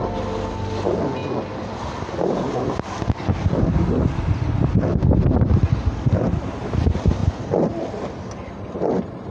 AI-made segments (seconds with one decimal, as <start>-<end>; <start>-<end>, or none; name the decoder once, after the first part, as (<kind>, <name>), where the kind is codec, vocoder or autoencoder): none

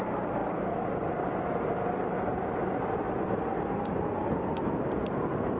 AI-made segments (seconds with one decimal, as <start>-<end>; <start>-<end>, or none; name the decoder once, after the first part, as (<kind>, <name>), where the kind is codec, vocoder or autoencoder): none